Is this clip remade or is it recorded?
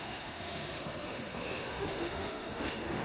remade